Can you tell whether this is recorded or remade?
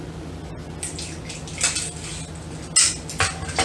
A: recorded